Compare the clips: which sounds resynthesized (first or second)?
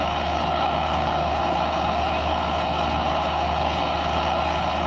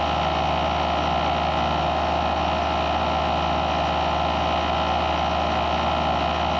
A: first